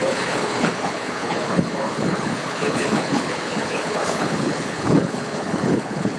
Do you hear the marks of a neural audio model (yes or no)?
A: yes